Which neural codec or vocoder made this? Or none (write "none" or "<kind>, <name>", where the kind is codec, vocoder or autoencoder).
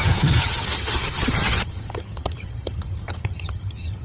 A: vocoder, HiFi-GAN